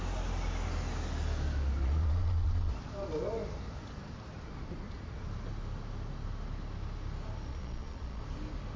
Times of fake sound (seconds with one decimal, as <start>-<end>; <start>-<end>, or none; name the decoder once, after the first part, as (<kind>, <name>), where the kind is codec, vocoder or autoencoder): 1.8-2.7 (vocoder, Vocos); 7.5-8.2